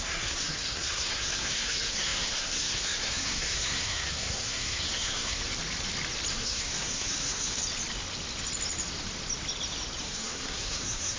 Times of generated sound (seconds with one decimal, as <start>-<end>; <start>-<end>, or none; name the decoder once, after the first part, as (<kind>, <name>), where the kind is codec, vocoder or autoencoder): 0.0-5.4 (codec, SNAC); 6.3-7.6; 10.0-11.2